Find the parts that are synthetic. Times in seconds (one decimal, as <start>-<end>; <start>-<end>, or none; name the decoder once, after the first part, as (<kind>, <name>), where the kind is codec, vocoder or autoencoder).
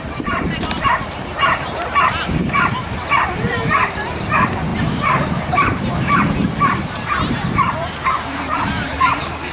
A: 0.0-9.5 (vocoder, BigVGAN v2)